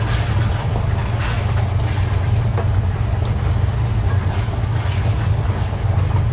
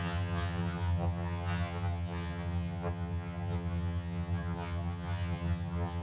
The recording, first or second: first